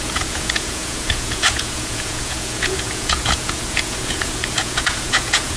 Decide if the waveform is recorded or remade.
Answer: remade